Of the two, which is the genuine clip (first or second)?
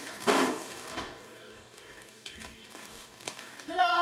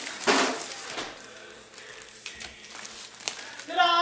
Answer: second